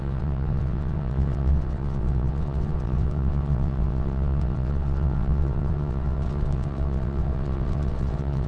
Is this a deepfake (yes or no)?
yes